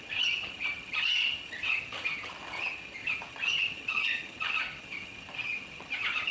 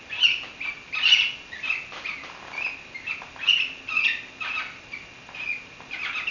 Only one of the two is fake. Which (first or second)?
first